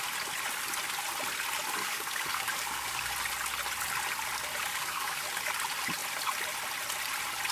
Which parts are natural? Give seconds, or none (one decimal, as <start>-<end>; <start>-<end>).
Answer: 0.0-1.8; 3.1-4.7; 5.2-7.5